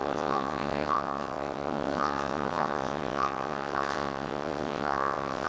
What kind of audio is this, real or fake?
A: fake